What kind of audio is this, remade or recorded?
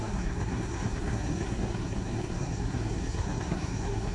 remade